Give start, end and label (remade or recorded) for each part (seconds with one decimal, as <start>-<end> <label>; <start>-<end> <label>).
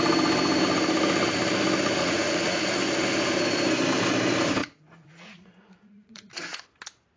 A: 0.0-2.0 recorded; 2.0-2.6 remade; 2.6-4.6 recorded; 4.6-6.6 remade; 6.6-7.2 recorded